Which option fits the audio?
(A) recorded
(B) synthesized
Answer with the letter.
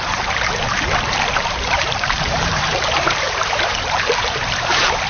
B